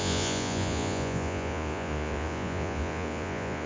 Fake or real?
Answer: fake